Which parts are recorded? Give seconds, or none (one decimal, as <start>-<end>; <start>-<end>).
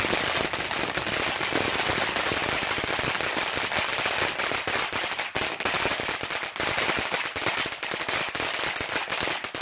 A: 0.0-9.6